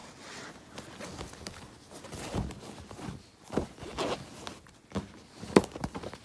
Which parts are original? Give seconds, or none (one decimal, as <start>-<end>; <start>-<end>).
0.5-6.2